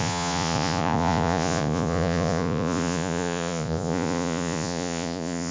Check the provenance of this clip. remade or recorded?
remade